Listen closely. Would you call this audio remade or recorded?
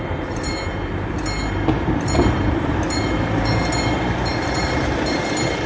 remade